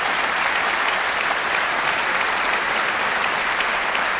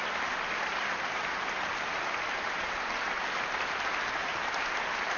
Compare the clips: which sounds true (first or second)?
second